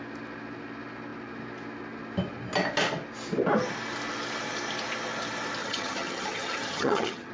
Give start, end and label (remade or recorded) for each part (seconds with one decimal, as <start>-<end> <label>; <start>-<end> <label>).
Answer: 0.0-5.6 recorded; 5.6-7.3 remade